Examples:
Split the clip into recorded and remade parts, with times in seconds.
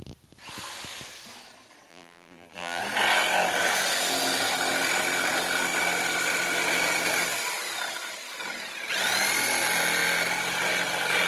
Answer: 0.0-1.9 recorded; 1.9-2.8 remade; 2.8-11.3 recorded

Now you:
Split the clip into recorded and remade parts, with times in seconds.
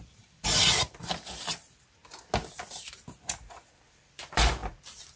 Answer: 0.0-2.0 remade; 2.0-3.9 recorded; 3.9-5.2 remade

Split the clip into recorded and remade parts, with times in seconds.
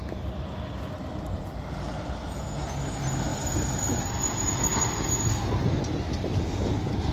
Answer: 0.0-1.3 recorded; 1.3-2.4 remade; 2.4-3.3 recorded; 3.3-4.0 remade; 4.0-7.1 recorded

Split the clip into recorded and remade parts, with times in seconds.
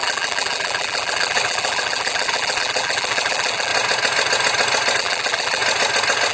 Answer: 0.0-3.7 remade; 3.7-5.0 recorded; 5.0-5.6 remade; 5.6-6.3 recorded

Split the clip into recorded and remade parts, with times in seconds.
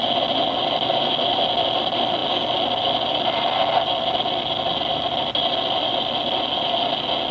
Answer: 0.0-7.3 recorded